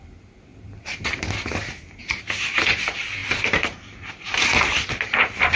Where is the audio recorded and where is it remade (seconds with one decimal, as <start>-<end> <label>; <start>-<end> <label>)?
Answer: 0.0-5.6 recorded